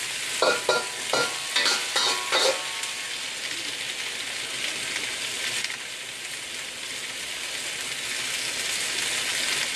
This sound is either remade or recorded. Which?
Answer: recorded